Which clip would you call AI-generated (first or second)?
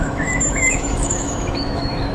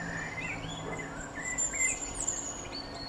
first